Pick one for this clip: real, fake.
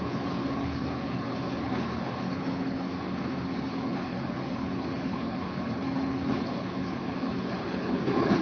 fake